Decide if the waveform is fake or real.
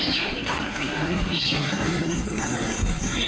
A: fake